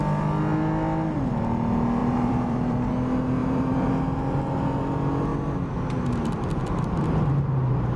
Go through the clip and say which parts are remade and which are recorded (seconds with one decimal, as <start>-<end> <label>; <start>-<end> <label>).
0.0-2.0 recorded; 2.0-2.9 remade; 2.9-3.4 recorded; 3.4-3.9 remade; 3.9-8.0 recorded